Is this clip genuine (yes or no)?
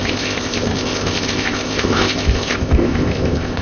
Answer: no